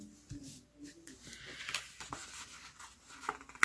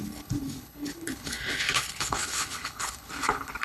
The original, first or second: first